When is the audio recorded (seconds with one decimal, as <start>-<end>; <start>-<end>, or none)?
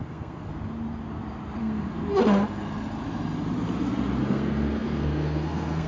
0.5-1.6; 2.0-4.2